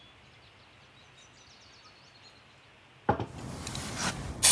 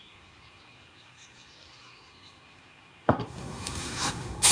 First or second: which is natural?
first